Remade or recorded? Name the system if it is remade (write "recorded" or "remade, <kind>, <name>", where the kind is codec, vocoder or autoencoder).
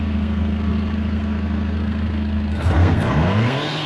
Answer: remade, codec, SNAC